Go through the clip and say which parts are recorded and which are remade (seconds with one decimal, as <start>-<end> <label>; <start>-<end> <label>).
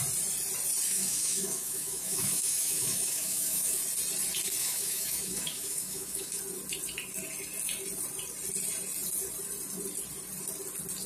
0.0-0.9 recorded; 0.9-3.8 remade; 3.8-4.6 recorded; 4.6-6.4 remade; 6.4-11.1 recorded